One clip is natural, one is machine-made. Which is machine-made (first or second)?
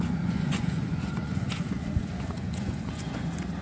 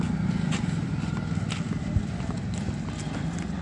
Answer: first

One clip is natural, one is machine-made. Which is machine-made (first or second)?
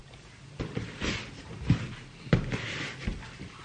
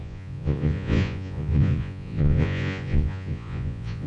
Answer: second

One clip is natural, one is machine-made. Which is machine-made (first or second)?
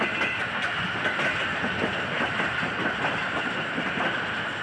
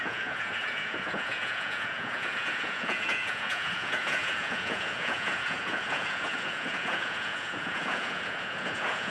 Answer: second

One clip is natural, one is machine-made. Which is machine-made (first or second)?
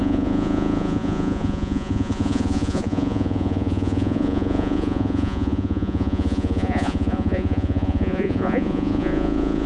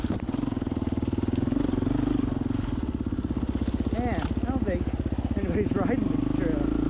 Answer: first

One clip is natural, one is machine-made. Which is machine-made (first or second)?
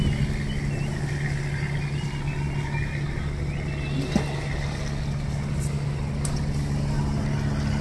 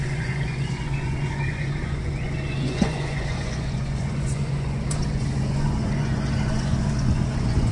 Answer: second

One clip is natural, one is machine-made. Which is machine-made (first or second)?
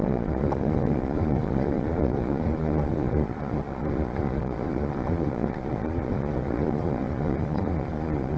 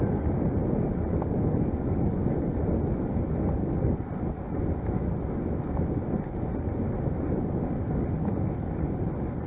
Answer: first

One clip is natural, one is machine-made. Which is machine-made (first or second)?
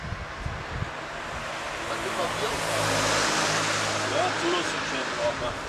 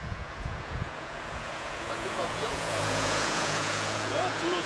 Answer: second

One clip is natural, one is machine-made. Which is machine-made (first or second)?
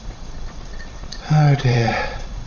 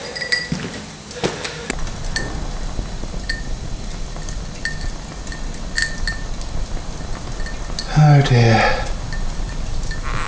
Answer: first